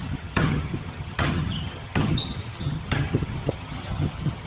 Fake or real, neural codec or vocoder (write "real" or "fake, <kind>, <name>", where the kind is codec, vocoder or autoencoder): fake, vocoder, HiFi-GAN